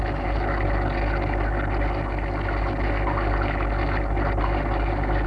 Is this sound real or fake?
real